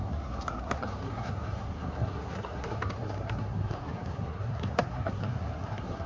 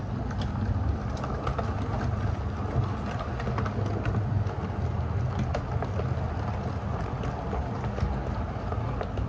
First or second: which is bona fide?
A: second